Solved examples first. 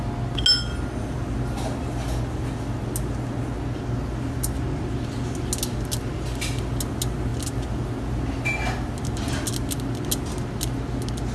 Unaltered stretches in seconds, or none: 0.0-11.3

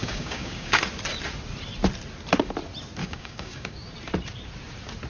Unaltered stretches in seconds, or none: 0.8-3.0; 3.8-5.1

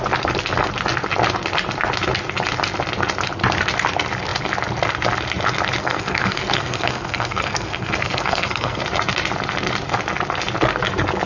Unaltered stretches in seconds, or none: 0.0-5.8; 8.8-11.3

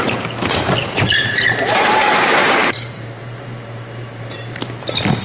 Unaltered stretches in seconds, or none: none

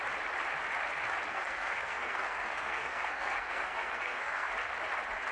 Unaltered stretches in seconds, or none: 0.0-1.3; 4.5-5.3